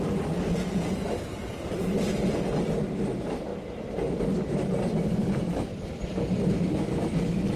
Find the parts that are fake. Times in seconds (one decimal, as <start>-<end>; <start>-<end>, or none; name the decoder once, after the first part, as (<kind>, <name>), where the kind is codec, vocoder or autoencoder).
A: none